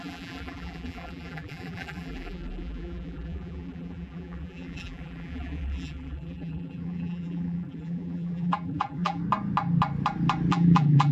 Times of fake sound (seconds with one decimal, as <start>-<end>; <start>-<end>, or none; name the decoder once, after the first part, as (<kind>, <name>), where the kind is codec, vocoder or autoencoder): 0.0-9.2 (vocoder, BigVGAN v2); 10.5-11.1

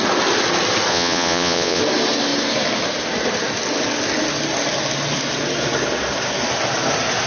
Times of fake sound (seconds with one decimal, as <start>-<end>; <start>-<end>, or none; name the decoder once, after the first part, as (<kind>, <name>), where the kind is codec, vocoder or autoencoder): 0.9-1.8 (vocoder, Vocos)

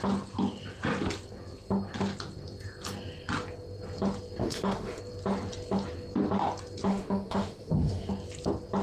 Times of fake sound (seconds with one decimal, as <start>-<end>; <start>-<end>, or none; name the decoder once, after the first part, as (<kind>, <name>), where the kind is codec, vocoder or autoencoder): 4.4-5.0 (autoencoder, DAC-VAE); 6.9-8.1

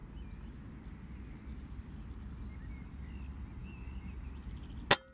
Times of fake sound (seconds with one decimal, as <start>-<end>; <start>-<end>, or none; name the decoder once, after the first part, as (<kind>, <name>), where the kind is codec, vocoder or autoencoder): none